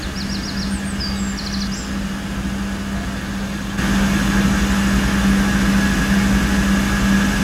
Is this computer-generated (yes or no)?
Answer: no